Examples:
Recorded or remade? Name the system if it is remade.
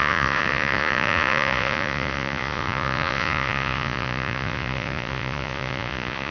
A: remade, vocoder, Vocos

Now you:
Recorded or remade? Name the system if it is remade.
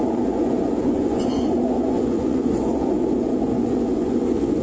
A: remade, vocoder, Vocos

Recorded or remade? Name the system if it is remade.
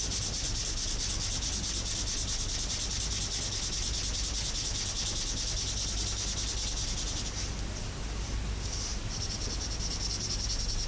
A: recorded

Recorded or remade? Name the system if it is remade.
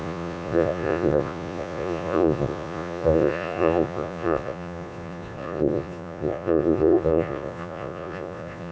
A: remade, vocoder, Vocos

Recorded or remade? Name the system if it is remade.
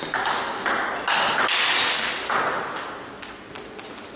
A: recorded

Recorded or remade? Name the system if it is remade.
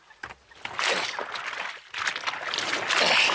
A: recorded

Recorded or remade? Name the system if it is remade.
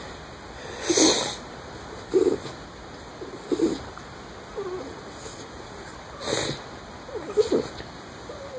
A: recorded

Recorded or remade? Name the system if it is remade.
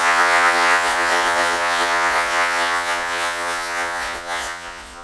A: remade, vocoder, Vocos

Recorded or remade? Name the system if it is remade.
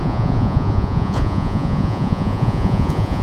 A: remade, vocoder, Vocos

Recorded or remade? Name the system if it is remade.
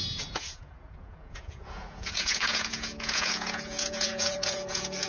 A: remade, vocoder, Vocos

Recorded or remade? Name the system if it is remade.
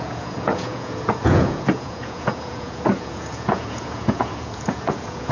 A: remade, vocoder, Vocos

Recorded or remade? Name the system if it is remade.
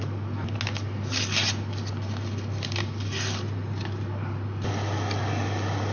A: recorded